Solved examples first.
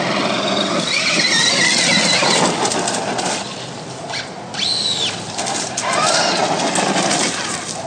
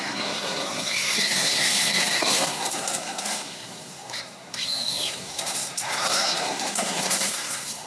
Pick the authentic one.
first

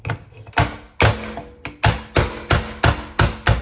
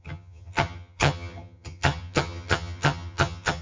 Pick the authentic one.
first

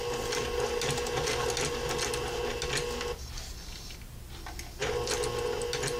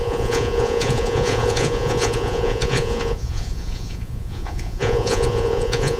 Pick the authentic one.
first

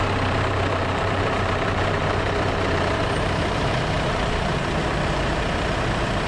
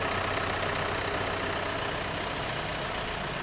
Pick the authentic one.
second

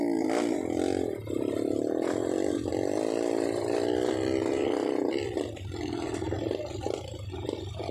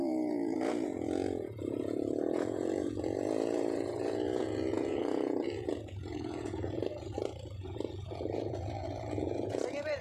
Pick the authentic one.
first